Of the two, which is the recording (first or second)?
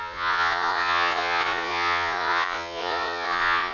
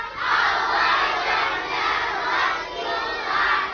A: second